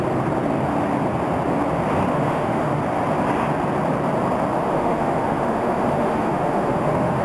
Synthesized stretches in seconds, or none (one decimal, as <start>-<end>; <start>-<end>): 2.1-2.8; 4.5-7.2